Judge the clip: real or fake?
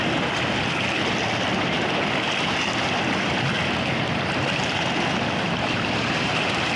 real